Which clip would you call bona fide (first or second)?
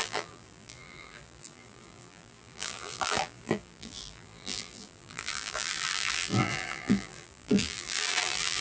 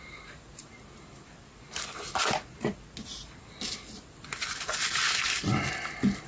second